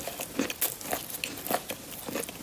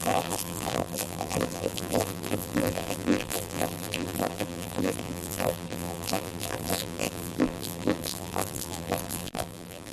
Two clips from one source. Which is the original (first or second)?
first